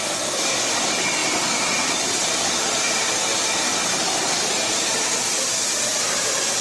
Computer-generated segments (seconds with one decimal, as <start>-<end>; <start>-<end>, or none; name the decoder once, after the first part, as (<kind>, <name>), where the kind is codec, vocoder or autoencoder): 0.0-0.6 (vocoder, BigVGAN v2); 1.2-5.2; 5.9-6.6